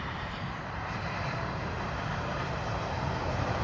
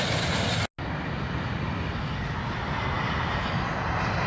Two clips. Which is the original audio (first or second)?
second